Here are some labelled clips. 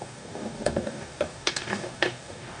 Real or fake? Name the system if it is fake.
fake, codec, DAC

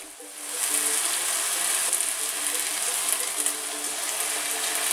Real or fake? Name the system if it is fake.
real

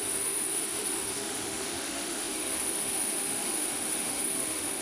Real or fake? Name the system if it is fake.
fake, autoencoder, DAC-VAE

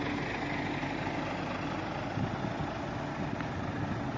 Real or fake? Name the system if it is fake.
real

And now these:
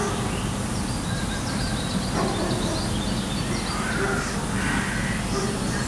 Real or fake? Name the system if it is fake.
real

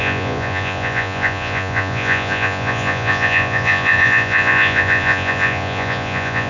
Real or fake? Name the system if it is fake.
fake, vocoder, Vocos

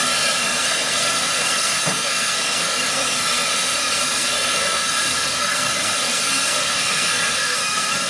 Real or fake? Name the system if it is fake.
fake, codec, SNAC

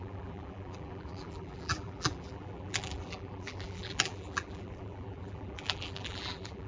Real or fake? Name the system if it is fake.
fake, vocoder, BigVGAN v2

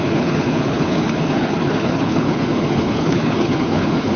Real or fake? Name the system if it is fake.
fake, codec, HILCodec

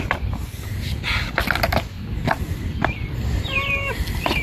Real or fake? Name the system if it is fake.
real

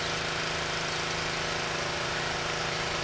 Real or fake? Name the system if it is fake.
real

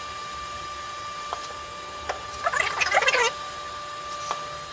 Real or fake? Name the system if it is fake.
real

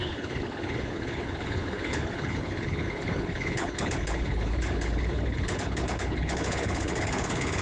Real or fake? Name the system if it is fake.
fake, codec, HILCodec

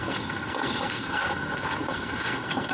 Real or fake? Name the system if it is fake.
fake, codec, SNAC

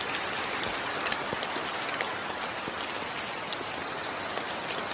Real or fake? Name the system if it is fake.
real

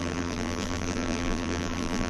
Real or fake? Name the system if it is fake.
fake, vocoder, BigVGAN v2